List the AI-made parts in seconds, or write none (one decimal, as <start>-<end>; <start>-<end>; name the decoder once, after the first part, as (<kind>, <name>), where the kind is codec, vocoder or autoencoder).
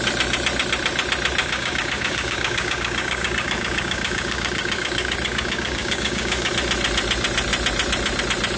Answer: 1.4-6.5 (codec, DAC)